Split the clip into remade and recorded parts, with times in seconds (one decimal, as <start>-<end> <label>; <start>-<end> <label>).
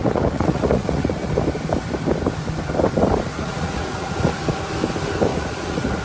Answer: 0.0-1.3 remade; 1.3-3.3 recorded; 3.3-4.4 remade; 4.4-5.3 recorded; 5.3-6.0 remade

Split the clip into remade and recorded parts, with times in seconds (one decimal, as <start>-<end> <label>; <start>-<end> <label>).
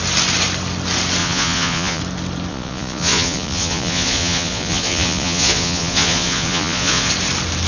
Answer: 0.0-1.2 recorded; 1.2-2.0 remade; 2.0-2.5 recorded; 2.5-7.1 remade; 7.1-7.7 recorded